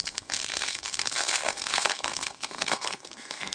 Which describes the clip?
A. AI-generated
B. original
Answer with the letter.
A